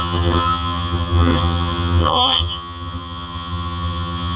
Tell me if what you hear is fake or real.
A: fake